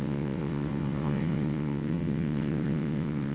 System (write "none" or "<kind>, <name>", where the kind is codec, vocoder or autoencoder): vocoder, WaveNeXt